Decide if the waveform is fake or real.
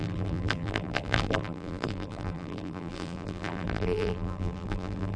fake